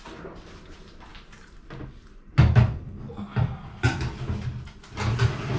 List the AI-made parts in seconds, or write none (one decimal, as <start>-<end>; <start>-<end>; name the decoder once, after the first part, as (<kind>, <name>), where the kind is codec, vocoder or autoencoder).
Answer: none